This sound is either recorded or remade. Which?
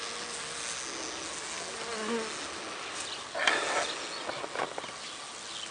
recorded